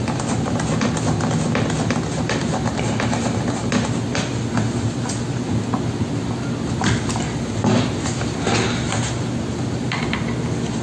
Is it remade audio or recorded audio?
recorded